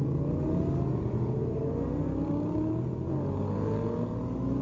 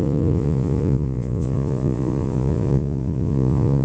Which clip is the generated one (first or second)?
second